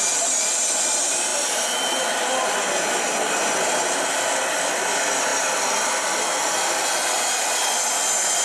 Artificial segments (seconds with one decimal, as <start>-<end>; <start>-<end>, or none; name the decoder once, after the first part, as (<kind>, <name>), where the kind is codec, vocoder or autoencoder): none